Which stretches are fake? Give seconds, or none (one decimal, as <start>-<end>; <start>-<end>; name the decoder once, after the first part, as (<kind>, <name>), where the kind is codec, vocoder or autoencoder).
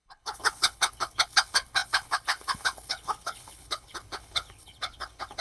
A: 0.0-5.4 (codec, HILCodec)